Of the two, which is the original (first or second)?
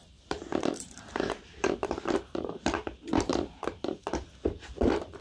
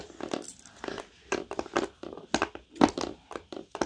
second